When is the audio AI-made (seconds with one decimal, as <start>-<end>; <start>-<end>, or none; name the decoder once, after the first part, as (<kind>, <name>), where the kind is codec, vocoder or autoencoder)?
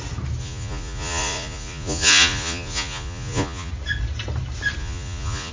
0.4-3.7 (vocoder, Vocos); 4.8-5.5